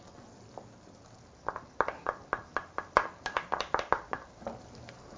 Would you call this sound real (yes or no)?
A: yes